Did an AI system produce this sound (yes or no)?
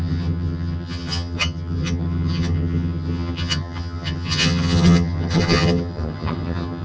yes